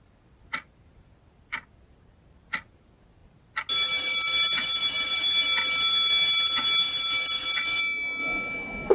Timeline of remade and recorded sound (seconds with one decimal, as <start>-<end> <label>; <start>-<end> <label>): 0.0-8.2 recorded; 8.2-8.9 remade